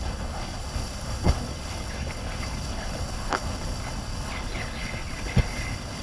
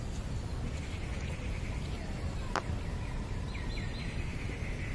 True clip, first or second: second